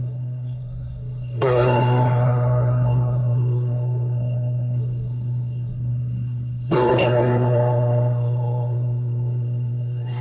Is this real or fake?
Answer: fake